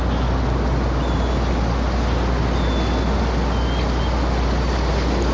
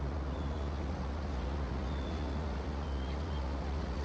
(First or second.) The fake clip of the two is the second